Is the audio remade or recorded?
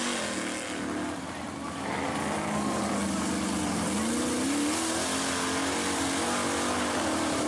recorded